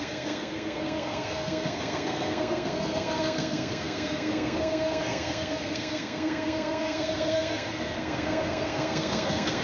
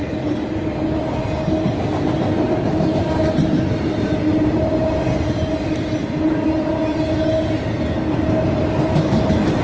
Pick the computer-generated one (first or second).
first